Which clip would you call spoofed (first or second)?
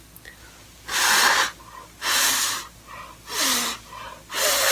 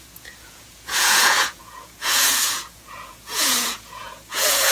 second